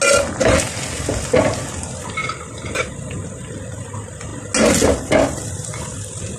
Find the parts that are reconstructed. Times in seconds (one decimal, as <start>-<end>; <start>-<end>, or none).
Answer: none